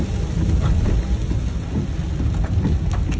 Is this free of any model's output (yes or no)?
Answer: yes